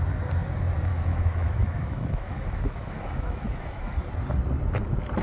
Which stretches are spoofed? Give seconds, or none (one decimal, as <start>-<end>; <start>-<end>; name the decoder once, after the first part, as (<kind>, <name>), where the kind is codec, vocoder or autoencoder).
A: 0.9-3.9 (autoencoder, DAC-VAE)